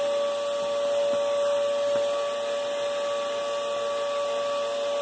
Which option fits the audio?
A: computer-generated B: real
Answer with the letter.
B